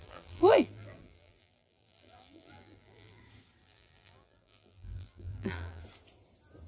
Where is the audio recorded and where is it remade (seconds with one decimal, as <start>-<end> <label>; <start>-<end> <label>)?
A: 0.0-3.2 remade; 3.2-3.6 recorded; 3.6-5.8 remade; 5.8-6.7 recorded